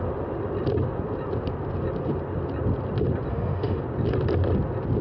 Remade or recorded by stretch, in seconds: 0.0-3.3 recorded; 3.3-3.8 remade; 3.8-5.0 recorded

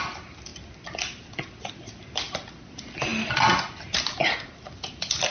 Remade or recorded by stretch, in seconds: 0.0-5.3 recorded

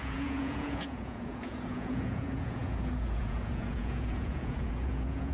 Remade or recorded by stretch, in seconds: 0.0-5.3 remade

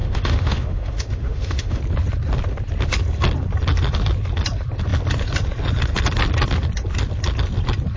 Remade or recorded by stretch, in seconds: 0.0-1.8 remade; 1.8-8.0 recorded

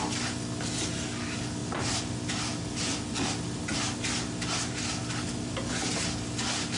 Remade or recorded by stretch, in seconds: 0.0-6.8 recorded